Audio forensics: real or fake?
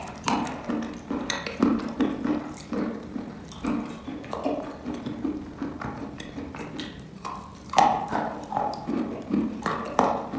fake